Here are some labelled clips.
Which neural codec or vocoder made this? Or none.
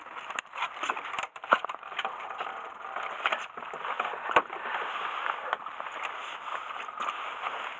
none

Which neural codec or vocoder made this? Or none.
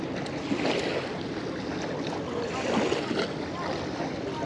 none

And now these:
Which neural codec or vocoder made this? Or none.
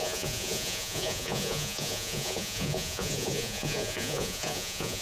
vocoder, Vocos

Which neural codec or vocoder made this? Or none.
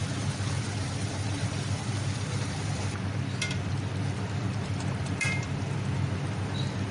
vocoder, BigVGAN v2